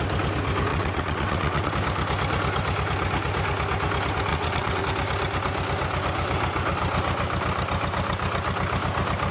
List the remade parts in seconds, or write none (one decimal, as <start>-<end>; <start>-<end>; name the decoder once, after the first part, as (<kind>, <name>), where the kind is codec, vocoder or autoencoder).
0.7-1.7 (vocoder, WaveNeXt); 4.3-4.8

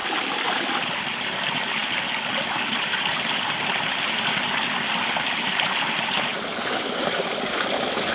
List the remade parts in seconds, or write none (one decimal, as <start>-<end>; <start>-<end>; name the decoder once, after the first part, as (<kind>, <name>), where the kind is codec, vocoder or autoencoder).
none

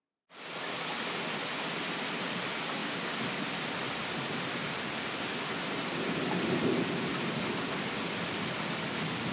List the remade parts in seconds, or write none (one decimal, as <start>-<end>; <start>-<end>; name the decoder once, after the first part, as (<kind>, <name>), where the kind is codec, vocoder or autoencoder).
none

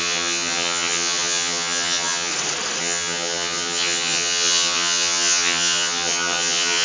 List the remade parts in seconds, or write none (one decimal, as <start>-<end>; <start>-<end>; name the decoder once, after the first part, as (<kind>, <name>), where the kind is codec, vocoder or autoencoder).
0.0-2.3 (vocoder, HiFi-GAN); 2.8-6.8

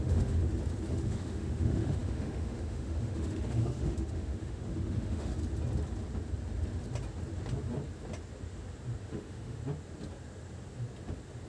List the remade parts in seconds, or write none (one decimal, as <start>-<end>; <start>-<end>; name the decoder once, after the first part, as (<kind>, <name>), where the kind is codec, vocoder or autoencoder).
0.0-0.4 (autoencoder, DAC-VAE); 0.9-5.4; 9.0-9.6

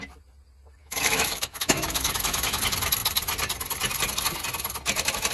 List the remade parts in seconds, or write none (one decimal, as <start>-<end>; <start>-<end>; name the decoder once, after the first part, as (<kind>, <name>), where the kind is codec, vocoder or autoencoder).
0.8-2.6 (autoencoder, DAC-VAE)

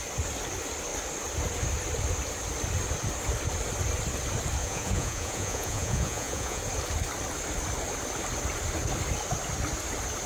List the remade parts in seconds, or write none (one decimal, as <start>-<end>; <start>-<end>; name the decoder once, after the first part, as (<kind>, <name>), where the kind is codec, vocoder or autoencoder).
4.6-6.6 (vocoder, Vocos)

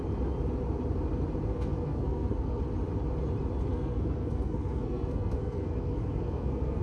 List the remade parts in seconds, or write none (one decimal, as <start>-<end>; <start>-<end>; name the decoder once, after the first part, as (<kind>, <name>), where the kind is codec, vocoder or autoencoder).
1.5-2.6 (codec, SNAC); 3.7-6.8